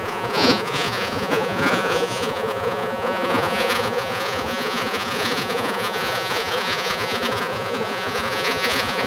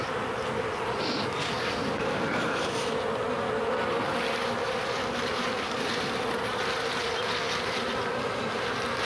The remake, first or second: first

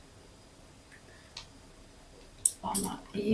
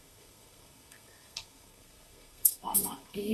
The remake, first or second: second